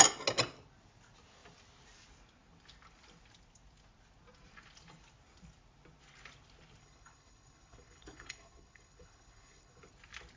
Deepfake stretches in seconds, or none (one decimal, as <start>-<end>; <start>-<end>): 6.8-9.9